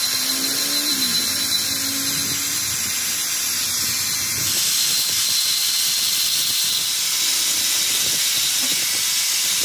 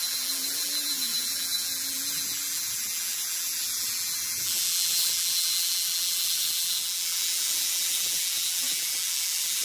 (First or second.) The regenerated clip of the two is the second